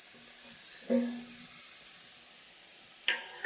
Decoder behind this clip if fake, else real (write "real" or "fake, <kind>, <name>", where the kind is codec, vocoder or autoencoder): real